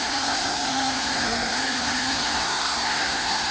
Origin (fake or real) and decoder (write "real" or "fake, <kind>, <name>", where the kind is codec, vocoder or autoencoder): fake, codec, SNAC